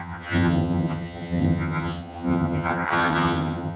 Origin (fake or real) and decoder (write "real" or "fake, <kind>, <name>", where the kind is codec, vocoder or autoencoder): fake, vocoder, HiFi-GAN